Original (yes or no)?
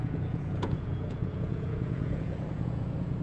no